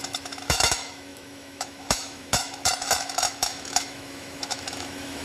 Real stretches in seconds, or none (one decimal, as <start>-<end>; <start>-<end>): none